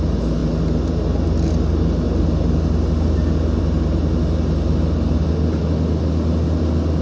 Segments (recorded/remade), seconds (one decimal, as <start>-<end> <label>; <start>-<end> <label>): 0.0-7.0 recorded